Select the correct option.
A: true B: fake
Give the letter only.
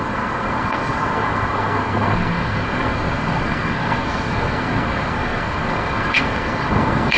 B